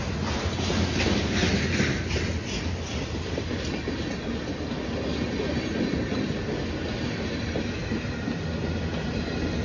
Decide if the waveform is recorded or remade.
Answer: recorded